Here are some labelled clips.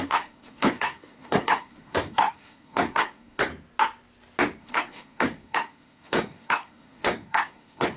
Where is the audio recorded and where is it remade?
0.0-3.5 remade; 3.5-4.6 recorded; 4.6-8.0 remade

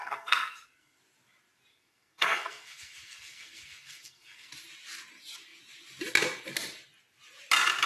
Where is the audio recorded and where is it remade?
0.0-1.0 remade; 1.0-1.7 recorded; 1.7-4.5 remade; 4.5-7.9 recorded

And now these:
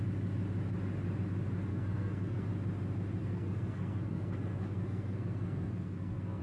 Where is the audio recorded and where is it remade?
0.0-1.7 recorded; 1.7-2.5 remade; 2.5-3.2 recorded; 3.2-6.4 remade